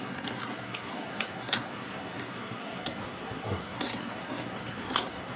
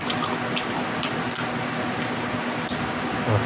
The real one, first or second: second